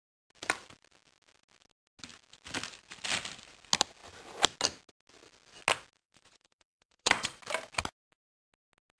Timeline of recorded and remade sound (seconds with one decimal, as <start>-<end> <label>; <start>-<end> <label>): 0.0-6.0 recorded; 6.0-7.4 remade; 7.4-9.0 recorded